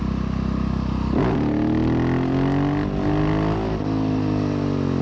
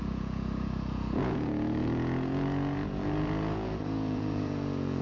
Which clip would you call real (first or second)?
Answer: first